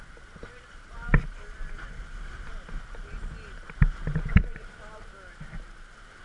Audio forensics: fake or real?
real